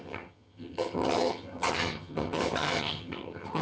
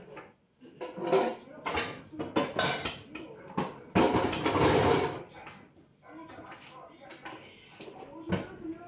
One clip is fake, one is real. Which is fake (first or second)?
first